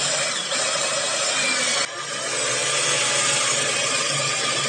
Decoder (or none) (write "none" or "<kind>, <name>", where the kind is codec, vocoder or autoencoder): none